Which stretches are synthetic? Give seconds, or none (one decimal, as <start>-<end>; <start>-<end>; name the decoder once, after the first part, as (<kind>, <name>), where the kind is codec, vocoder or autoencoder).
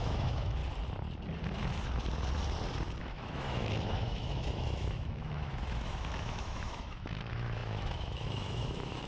0.0-0.6 (autoencoder, DAC-VAE); 3.0-9.1